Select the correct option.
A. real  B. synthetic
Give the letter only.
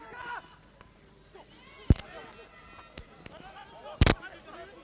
A